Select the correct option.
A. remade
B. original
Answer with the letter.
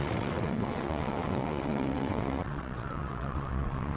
A